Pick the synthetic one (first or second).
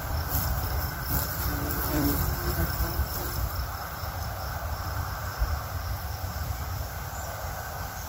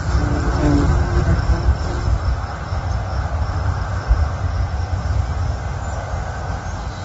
first